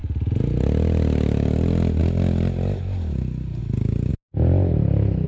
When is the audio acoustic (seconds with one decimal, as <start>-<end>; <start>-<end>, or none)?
0.0-5.3